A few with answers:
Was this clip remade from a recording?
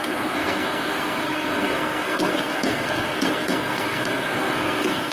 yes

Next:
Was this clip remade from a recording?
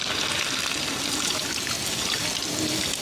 no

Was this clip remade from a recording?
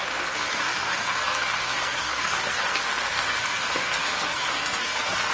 yes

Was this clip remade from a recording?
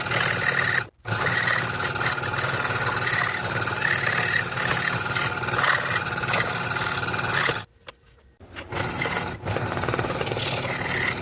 no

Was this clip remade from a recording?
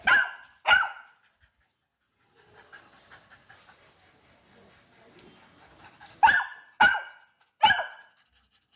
no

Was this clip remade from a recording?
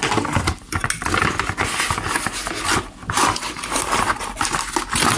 no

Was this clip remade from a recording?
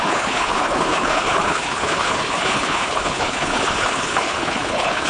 yes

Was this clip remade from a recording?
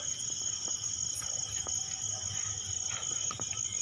no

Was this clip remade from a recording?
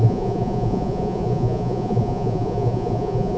yes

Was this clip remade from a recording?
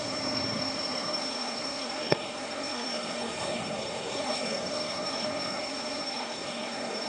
yes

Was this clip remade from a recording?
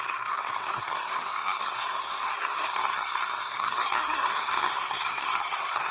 yes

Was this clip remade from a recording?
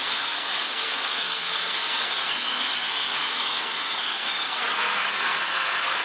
yes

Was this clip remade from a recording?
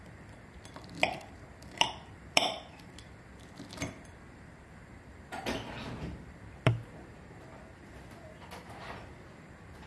yes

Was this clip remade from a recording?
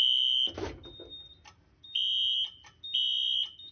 no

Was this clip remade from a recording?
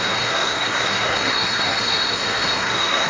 yes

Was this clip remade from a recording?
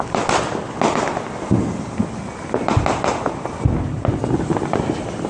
no